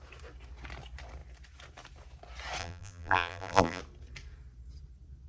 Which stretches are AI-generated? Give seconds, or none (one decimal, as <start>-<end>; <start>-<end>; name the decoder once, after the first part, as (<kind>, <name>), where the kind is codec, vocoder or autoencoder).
2.6-3.8 (vocoder, BigVGAN v2)